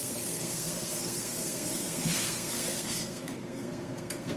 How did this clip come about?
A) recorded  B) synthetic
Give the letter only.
B